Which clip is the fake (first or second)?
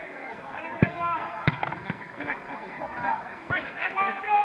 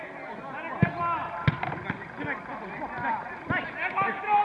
first